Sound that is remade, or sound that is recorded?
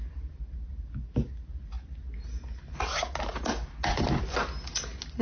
recorded